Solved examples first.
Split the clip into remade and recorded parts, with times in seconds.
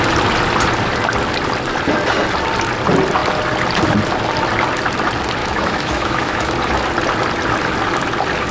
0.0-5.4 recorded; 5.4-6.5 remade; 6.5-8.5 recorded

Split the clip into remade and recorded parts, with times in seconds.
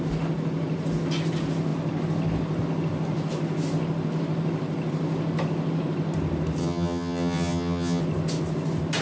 0.0-6.6 recorded; 6.6-8.0 remade; 8.0-9.0 recorded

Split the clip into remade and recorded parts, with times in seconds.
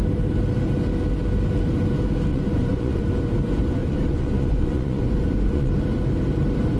0.0-2.3 recorded; 2.3-3.0 remade; 3.0-3.8 recorded; 3.8-5.7 remade; 5.7-6.8 recorded